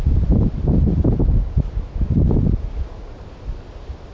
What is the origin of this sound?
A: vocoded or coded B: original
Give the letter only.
B